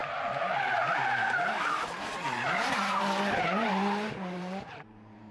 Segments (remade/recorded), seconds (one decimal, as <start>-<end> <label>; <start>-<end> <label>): 0.0-5.3 remade

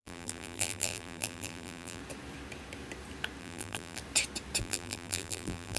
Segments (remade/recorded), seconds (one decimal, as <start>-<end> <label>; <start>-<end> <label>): 0.0-2.0 remade; 2.0-3.4 recorded; 3.4-4.0 remade; 4.0-4.6 recorded; 4.6-5.8 remade